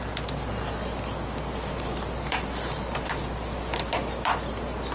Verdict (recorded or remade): recorded